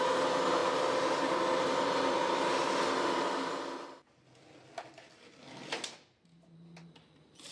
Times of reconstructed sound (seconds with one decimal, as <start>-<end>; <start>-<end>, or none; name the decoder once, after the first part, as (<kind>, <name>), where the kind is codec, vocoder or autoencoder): none